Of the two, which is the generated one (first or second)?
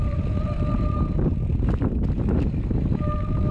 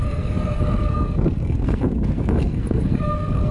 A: second